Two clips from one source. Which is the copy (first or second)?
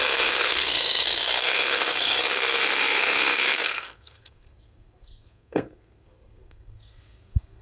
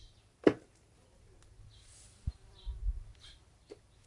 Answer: first